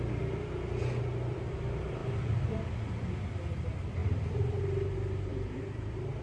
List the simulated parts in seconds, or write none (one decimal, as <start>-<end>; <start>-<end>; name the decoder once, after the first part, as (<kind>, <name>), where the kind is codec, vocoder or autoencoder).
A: 2.0-2.7 (vocoder, BigVGAN v2); 4.0-4.6; 5.3-6.2